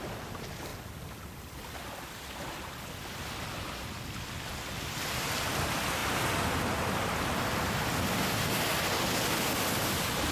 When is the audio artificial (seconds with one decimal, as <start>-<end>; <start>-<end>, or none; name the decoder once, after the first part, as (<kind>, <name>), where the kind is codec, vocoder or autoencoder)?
none